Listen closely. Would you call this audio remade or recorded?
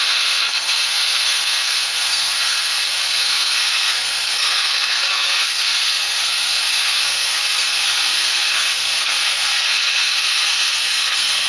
remade